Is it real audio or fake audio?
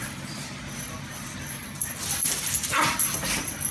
real